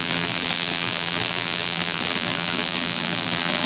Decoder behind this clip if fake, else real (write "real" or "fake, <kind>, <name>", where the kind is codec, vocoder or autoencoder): fake, vocoder, BigVGAN v2